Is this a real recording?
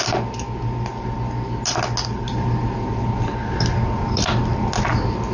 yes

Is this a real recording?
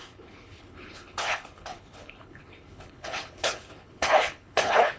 no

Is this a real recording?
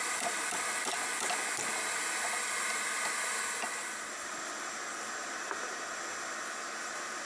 yes